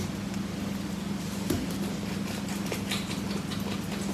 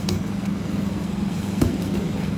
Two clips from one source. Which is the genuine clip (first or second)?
first